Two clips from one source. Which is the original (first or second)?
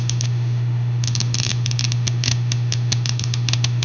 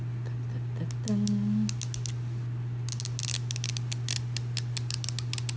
second